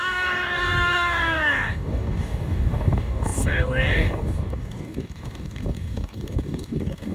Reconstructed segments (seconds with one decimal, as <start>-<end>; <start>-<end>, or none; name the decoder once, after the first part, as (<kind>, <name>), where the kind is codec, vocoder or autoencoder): 0.0-7.1 (codec, DAC)